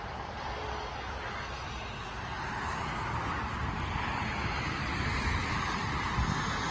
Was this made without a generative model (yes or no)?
yes